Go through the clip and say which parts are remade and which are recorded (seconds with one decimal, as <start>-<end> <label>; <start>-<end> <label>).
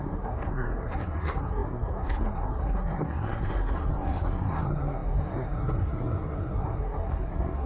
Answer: 0.0-7.7 remade